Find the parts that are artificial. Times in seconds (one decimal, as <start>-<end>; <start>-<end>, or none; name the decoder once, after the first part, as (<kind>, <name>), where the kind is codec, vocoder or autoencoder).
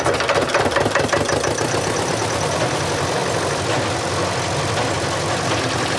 none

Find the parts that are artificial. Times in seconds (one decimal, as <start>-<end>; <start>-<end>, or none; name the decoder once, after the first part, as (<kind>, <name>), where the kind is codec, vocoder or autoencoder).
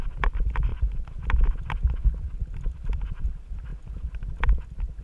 none